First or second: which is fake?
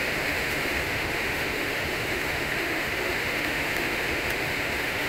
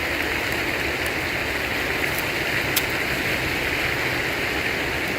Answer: first